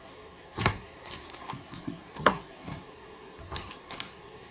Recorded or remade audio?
remade